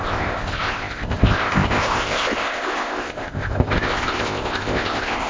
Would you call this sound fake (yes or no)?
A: yes